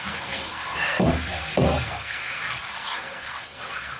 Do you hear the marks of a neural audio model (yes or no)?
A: yes